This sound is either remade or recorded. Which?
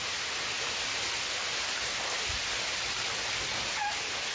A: recorded